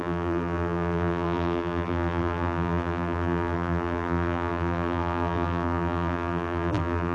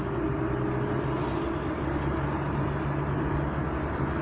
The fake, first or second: first